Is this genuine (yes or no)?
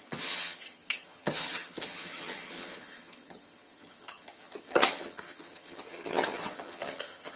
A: no